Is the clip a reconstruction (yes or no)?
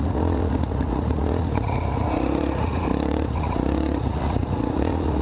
yes